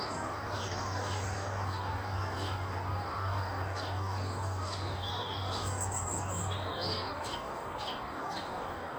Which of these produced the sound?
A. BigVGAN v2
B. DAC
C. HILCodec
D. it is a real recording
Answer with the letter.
B